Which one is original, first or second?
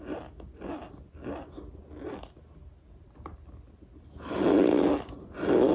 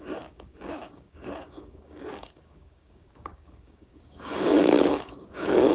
first